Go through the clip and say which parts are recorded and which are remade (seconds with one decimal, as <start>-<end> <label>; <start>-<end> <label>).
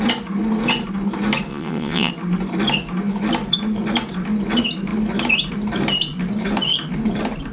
0.0-1.5 recorded; 1.5-2.1 remade; 2.1-7.5 recorded